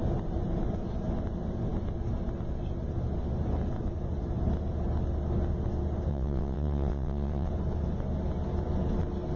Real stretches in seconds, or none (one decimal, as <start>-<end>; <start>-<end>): 0.0-6.1; 7.5-9.4

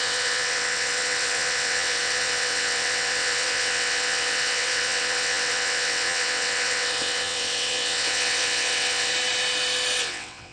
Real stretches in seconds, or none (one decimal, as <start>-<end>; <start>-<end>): 9.1-10.0

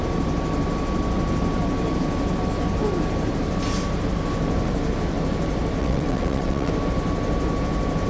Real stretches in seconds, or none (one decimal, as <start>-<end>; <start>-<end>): 0.0-5.8; 6.7-8.1

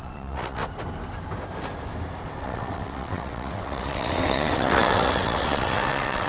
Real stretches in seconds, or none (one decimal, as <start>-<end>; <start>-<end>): 0.6-2.4

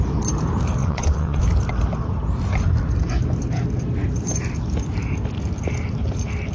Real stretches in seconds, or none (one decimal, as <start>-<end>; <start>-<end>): 0.0-0.8; 1.4-6.5

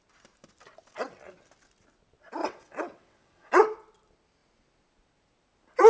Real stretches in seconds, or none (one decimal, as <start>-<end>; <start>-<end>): 0.0-2.4; 3.6-5.9

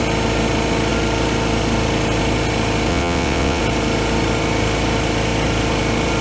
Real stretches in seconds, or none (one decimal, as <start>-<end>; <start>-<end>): 0.0-2.9; 3.6-6.2